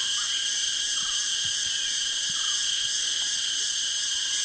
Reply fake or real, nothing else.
fake